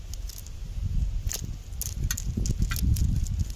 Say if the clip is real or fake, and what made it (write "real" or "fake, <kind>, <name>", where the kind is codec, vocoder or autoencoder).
real